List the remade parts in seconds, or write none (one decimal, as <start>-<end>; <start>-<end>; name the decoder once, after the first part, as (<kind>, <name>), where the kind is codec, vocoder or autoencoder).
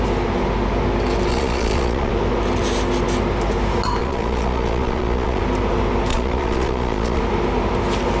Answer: 1.3-2.1 (vocoder, Vocos); 4.0-5.4; 6.1-7.2